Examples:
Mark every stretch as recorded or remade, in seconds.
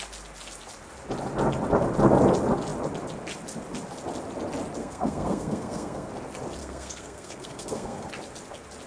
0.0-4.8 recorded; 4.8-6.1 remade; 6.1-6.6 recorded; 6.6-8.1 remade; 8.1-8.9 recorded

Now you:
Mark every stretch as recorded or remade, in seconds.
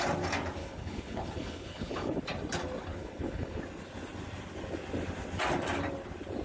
0.0-0.6 recorded; 0.6-2.2 remade; 2.2-2.9 recorded; 2.9-3.6 remade; 3.6-6.4 recorded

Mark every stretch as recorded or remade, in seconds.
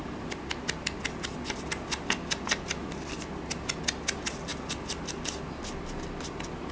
0.0-6.7 recorded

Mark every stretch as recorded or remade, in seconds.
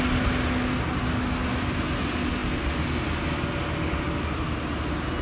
0.0-5.2 recorded